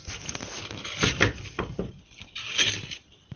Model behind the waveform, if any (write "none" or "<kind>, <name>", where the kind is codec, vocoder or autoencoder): none